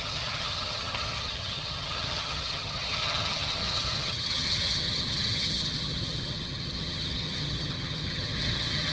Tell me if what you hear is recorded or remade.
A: remade